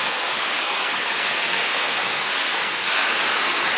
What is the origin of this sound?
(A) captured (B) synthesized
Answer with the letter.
B